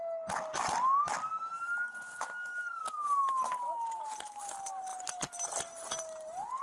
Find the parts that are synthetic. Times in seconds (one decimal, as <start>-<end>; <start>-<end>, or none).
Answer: none